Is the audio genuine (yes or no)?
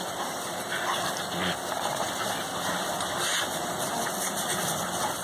yes